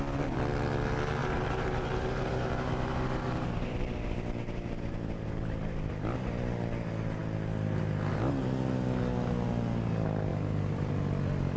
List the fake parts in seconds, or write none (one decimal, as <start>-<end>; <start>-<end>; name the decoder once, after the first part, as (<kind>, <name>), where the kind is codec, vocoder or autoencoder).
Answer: 1.2-5.9 (vocoder, BigVGAN v2); 10.3-10.9